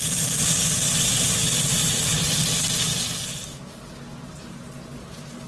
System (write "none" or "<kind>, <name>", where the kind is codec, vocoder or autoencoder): none